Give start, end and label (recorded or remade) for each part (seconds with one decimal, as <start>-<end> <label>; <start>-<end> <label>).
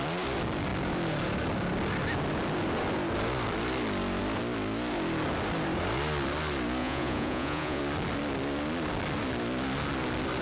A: 0.0-6.8 recorded; 6.8-7.8 remade; 7.8-10.4 recorded